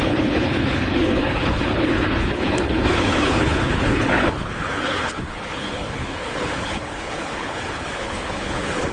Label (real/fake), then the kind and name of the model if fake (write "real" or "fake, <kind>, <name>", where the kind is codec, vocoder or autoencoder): fake, codec, HILCodec